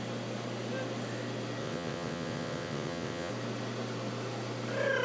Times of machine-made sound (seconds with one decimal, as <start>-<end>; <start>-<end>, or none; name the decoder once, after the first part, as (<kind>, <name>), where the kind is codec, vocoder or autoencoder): 1.6-3.3 (vocoder, WaveNeXt)